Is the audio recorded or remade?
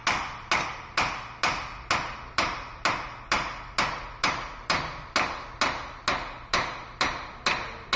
recorded